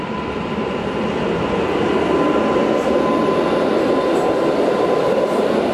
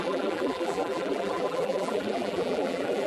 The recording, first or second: first